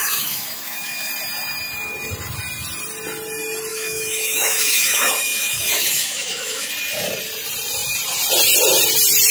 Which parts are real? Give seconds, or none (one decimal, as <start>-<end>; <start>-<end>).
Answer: 1.1-3.7; 6.7-9.3